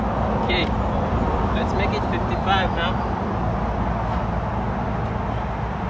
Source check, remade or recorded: recorded